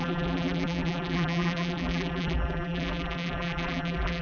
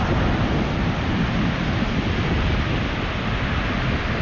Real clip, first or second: second